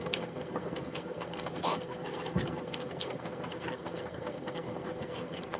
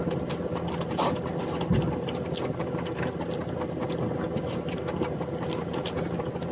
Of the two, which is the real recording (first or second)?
second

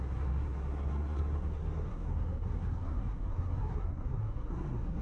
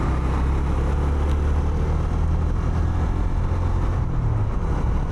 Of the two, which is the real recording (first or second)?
second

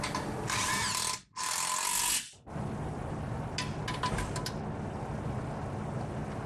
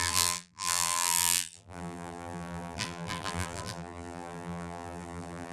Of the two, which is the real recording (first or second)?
first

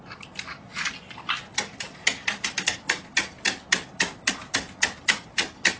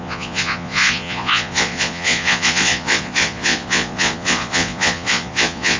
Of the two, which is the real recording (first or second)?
first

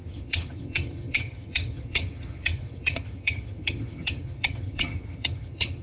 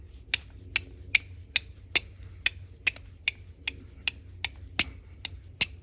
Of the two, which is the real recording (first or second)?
second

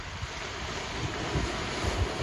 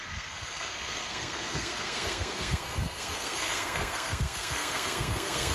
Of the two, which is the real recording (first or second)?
first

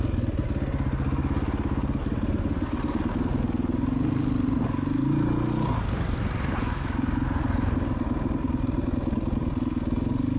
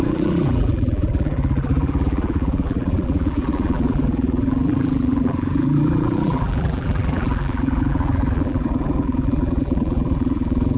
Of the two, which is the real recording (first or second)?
first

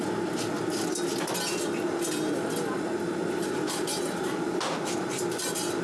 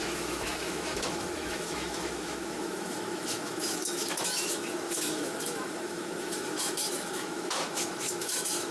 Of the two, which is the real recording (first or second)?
first